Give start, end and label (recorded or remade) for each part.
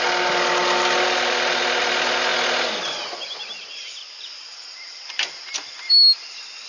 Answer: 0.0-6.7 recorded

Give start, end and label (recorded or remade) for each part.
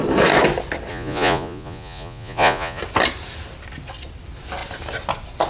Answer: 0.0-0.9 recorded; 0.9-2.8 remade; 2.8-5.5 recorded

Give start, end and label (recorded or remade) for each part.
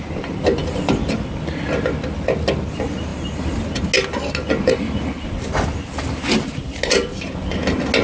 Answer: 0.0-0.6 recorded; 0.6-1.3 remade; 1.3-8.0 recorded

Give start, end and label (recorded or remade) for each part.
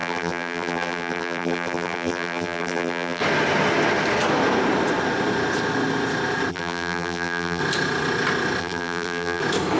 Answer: 0.0-3.2 remade; 3.2-6.5 recorded; 6.5-7.6 remade; 7.6-8.6 recorded; 8.6-9.4 remade; 9.4-9.8 recorded